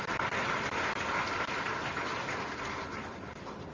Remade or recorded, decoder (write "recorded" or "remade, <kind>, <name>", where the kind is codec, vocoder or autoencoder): recorded